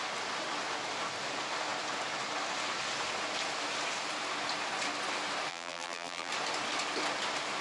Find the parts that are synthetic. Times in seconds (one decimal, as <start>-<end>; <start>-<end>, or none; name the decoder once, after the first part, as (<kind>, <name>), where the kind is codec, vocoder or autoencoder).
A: 5.5-6.3 (vocoder, BigVGAN v2)